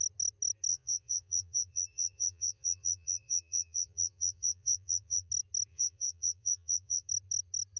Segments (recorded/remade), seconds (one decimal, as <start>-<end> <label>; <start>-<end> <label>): 0.0-0.7 recorded; 0.7-5.3 remade; 5.3-5.7 recorded; 5.7-7.1 remade; 7.1-7.8 recorded